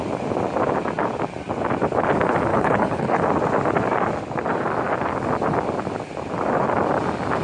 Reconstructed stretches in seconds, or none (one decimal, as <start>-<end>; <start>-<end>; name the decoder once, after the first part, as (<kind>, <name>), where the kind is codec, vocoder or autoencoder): 2.5-3.2 (codec, HILCodec)